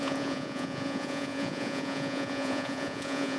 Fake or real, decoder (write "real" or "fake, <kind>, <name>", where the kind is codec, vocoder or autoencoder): fake, vocoder, Vocos